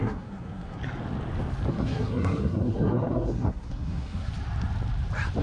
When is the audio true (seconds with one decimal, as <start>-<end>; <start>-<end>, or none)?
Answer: 0.8-1.7; 4.3-5.4